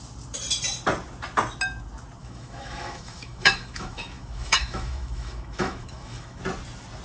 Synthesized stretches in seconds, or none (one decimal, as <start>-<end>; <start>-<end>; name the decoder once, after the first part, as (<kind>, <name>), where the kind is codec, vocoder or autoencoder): 2.2-6.4 (autoencoder, DAC-VAE)